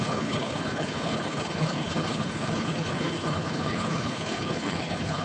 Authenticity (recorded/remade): remade